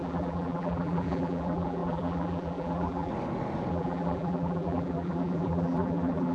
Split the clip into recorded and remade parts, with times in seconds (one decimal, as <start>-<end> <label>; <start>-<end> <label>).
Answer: 0.0-3.1 remade; 3.1-3.7 recorded; 3.7-6.3 remade